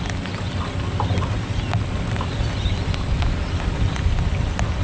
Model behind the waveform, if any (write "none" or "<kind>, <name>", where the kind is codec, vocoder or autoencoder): none